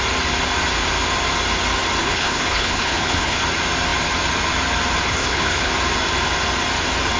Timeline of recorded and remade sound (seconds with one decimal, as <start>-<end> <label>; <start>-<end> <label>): 0.0-2.0 recorded; 2.0-3.4 remade; 3.4-5.1 recorded; 5.1-5.7 remade; 5.7-7.2 recorded